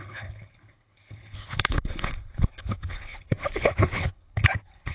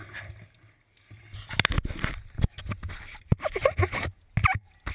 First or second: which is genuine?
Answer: second